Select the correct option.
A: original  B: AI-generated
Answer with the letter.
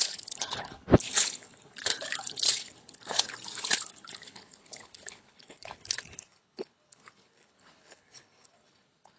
B